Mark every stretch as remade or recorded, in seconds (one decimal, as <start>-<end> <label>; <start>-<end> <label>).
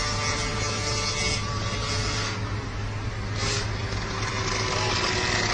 0.0-5.5 recorded